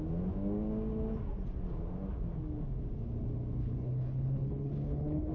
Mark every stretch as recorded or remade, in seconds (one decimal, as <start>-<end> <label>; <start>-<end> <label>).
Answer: 0.0-3.6 recorded; 3.6-5.3 remade